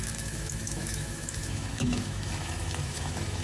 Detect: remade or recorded remade